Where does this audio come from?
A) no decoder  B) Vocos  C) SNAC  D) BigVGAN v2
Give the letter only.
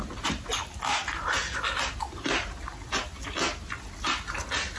A